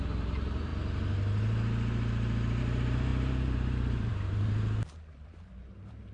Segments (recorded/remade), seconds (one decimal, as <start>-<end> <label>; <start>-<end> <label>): 0.0-0.7 remade; 0.7-2.6 recorded; 2.6-6.1 remade